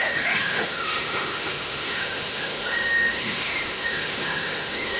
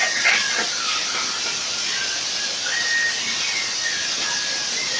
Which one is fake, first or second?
first